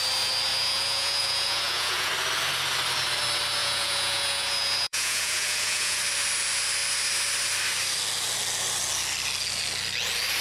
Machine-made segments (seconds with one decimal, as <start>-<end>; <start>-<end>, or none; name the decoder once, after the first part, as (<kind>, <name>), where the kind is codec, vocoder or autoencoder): 0.5-2.1 (vocoder, Vocos); 3.6-6.0